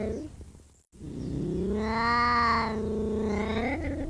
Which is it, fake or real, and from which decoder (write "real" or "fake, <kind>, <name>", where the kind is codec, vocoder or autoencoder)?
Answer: real